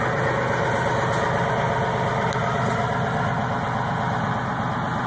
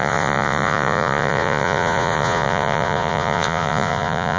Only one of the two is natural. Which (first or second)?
first